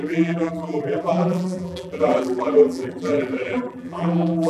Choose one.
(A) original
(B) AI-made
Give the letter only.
B